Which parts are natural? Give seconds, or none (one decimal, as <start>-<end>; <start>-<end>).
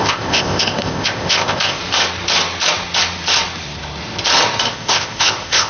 1.8-4.7